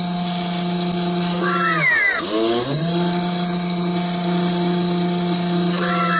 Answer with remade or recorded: recorded